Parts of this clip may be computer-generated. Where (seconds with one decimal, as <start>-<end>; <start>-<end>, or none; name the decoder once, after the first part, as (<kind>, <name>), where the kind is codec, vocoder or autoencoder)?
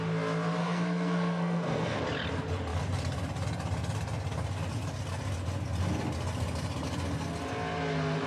0.6-2.0 (codec, SNAC)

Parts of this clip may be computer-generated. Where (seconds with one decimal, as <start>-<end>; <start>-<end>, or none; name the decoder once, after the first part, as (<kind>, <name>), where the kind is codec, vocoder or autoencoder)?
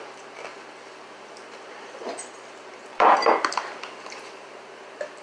0.5-3.6 (vocoder, BigVGAN v2)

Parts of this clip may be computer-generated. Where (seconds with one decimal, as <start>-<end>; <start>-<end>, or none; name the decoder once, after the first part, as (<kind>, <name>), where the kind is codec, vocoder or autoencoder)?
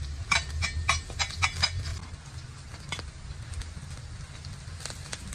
none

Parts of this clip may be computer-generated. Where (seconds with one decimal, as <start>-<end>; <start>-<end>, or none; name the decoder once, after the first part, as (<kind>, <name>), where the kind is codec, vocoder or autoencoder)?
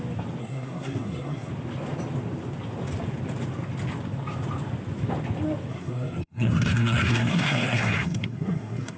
0.4-1.5 (codec, SNAC); 5.7-9.0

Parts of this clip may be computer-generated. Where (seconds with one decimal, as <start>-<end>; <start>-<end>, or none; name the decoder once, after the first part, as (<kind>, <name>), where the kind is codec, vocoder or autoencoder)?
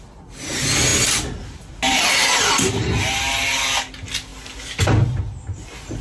none